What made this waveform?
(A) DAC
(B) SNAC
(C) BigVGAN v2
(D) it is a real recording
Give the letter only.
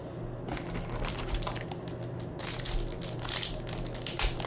D